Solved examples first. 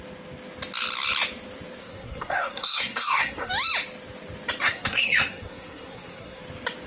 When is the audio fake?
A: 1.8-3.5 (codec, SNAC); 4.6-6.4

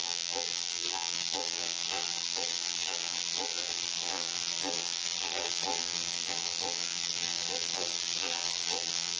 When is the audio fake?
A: 0.0-9.2 (vocoder, BigVGAN v2)

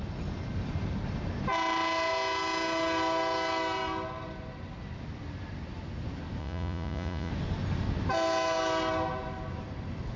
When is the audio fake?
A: 6.4-7.3 (vocoder, Vocos)